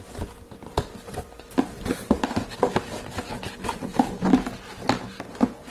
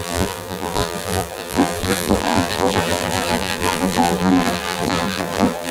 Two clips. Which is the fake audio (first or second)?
second